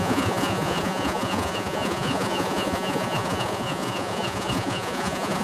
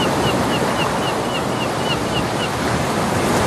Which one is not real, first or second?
first